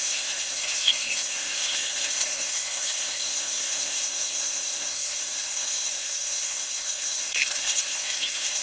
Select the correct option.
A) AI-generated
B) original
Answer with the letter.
A